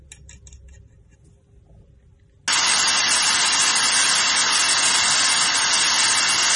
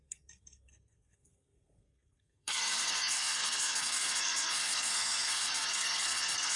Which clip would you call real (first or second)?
first